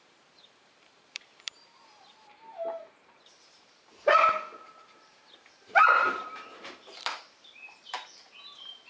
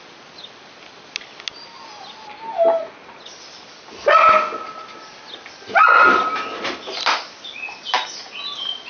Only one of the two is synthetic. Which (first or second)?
first